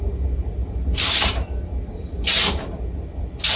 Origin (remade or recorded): recorded